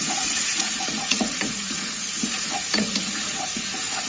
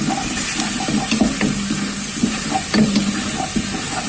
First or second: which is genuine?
second